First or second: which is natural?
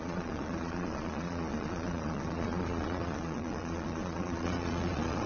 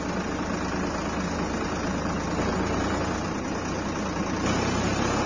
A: second